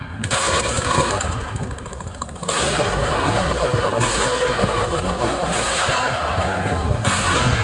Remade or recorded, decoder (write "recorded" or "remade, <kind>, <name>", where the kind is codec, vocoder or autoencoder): remade, codec, SNAC